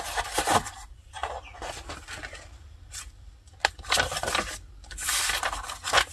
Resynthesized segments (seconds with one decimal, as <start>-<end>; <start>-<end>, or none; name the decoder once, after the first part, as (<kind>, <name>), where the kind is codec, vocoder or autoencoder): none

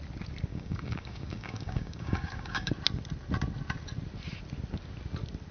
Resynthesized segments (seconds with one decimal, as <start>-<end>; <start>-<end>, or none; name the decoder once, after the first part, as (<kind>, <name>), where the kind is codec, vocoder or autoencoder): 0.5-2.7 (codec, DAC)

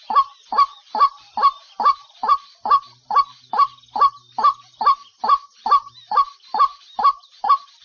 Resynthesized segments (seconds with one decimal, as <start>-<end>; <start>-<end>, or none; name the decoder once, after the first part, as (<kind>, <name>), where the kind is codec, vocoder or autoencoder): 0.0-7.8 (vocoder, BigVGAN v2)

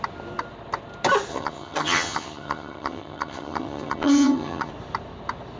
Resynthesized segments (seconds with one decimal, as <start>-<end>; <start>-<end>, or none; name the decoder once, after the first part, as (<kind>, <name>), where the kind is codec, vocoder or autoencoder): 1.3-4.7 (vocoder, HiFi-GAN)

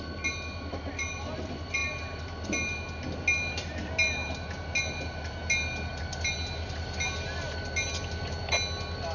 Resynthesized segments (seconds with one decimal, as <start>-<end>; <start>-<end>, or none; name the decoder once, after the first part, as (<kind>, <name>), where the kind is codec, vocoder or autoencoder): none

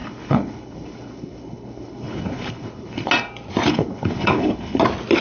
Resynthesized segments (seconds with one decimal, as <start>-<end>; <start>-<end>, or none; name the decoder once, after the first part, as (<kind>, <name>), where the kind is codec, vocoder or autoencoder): 0.0-3.1 (codec, HILCodec); 3.7-4.8